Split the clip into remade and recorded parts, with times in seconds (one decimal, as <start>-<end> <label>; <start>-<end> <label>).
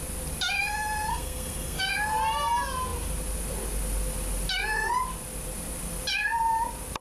0.0-1.1 recorded; 1.1-1.8 remade; 1.8-7.0 recorded